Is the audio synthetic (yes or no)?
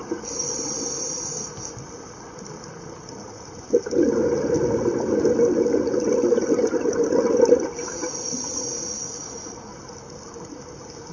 no